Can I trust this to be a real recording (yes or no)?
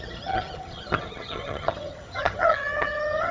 no